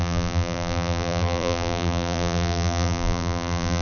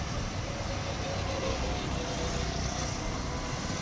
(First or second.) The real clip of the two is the second